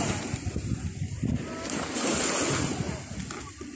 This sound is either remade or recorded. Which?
recorded